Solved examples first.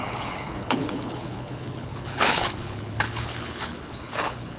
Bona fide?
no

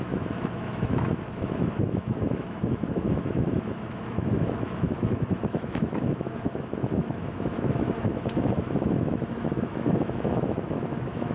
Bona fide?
no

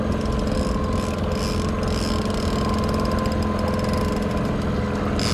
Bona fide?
yes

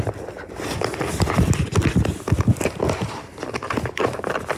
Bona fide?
no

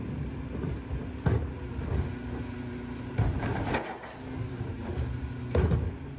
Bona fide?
yes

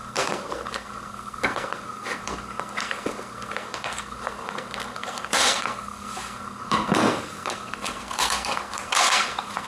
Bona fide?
no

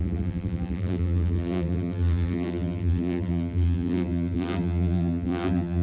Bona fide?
no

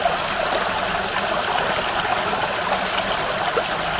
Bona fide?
yes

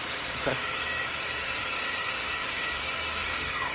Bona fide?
no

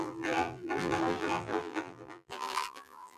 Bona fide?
no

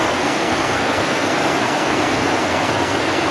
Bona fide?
no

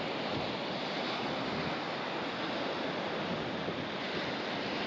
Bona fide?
yes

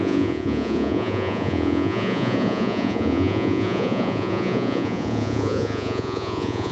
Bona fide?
no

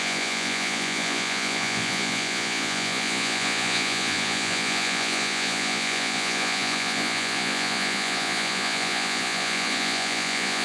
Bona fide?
no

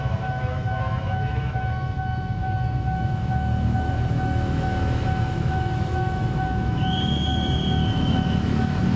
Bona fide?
no